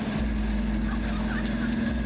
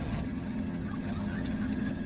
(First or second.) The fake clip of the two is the second